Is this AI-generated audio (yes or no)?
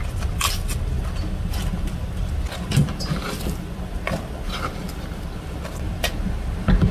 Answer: no